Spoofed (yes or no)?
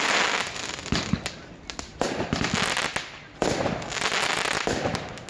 no